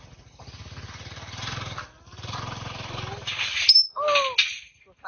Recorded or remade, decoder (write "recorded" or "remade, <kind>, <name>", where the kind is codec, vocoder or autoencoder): recorded